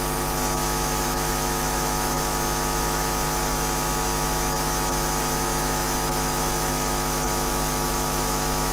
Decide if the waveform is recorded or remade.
remade